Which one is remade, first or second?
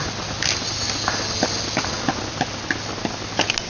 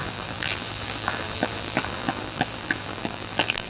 second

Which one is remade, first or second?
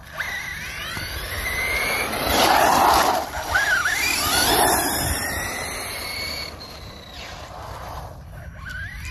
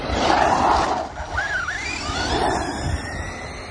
first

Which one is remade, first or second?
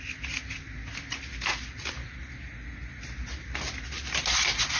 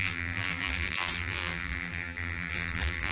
second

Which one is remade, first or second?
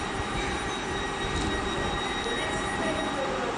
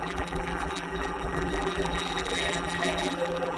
second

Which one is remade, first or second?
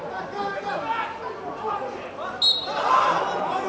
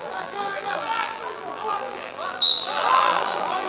second